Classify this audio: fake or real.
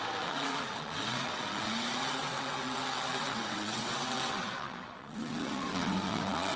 fake